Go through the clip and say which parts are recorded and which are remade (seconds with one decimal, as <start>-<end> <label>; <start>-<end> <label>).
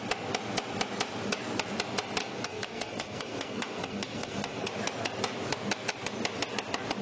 0.0-2.2 recorded; 2.2-4.7 remade; 4.7-7.0 recorded